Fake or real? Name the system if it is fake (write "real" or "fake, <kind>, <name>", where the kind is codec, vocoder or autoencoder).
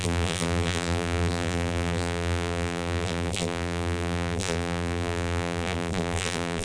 fake, vocoder, BigVGAN v2